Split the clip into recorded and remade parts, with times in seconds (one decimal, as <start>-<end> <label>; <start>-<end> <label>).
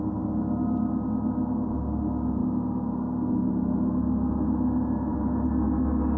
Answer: 0.0-6.2 recorded